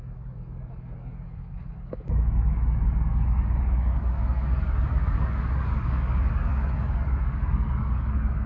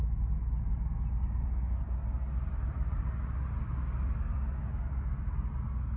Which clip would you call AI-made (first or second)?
first